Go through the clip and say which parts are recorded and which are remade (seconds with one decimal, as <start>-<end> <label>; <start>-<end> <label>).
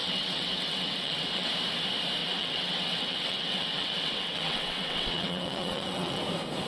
0.0-1.5 remade; 1.5-2.2 recorded; 2.2-6.2 remade; 6.2-6.7 recorded